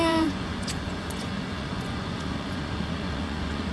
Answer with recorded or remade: remade